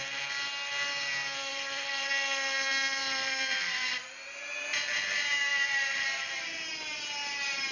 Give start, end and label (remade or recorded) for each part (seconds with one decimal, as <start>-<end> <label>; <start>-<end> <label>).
0.0-1.5 recorded; 1.5-2.1 remade; 2.1-3.0 recorded; 3.0-4.7 remade; 4.7-5.5 recorded; 5.5-6.4 remade; 6.4-7.7 recorded